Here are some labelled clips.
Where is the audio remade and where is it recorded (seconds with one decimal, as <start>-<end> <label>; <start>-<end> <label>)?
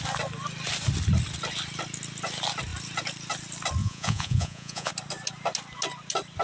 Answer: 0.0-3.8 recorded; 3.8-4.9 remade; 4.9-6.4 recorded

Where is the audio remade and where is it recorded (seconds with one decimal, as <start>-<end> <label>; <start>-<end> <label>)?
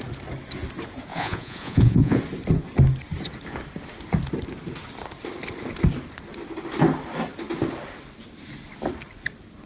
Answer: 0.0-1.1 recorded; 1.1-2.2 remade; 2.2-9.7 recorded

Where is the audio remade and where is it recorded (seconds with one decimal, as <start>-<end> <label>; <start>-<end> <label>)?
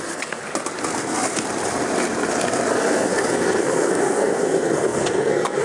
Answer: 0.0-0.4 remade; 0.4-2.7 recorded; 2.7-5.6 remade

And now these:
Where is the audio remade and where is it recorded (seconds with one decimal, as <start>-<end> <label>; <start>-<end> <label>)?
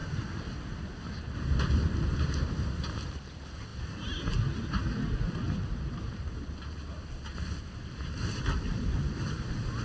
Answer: 0.0-2.0 recorded; 2.0-3.7 remade; 3.7-7.5 recorded; 7.5-9.8 remade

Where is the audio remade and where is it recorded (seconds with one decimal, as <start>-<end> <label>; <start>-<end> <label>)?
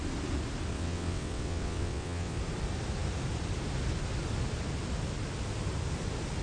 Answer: 0.0-0.7 recorded; 0.7-2.4 remade; 2.4-6.4 recorded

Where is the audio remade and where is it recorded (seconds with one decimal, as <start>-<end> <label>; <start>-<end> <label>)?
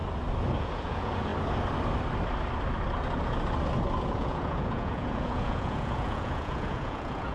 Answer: 0.0-0.6 recorded; 0.6-1.3 remade; 1.3-4.0 recorded; 4.0-7.3 remade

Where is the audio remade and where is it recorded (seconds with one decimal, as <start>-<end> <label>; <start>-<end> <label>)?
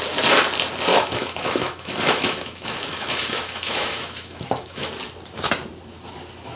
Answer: 0.0-0.9 recorded; 0.9-4.9 remade; 4.9-6.6 recorded